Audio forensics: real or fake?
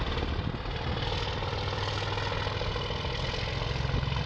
real